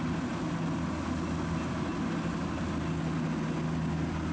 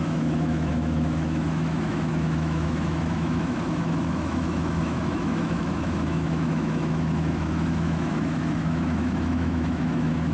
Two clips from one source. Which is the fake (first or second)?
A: second